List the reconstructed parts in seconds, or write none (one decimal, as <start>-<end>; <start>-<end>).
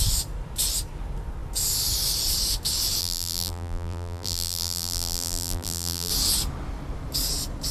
3.0-6.1